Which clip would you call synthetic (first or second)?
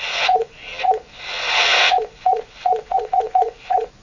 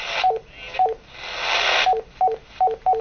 first